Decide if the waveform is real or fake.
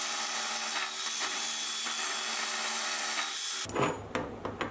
real